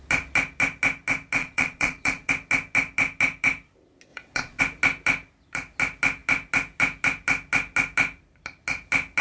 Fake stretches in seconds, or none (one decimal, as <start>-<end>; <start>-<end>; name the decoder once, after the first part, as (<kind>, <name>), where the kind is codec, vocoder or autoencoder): 1.4-2.3 (vocoder, Vocos); 4.1-4.6